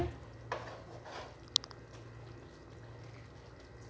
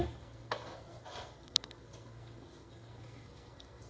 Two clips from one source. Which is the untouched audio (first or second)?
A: first